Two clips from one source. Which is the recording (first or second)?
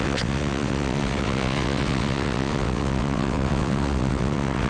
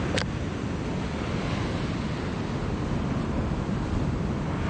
second